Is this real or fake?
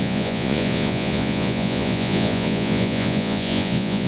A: fake